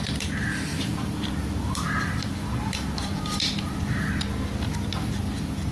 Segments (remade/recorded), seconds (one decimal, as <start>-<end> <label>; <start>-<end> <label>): 0.0-0.7 recorded; 0.7-4.1 remade; 4.1-5.7 recorded